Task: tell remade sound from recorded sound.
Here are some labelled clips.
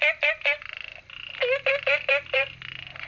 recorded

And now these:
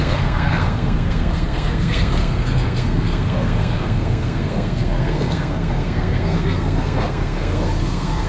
remade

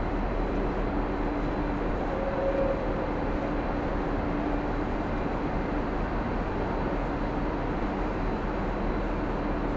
recorded